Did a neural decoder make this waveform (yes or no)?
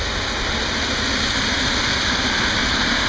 no